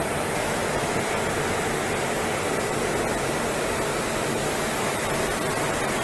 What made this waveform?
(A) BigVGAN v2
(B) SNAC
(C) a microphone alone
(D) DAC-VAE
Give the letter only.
C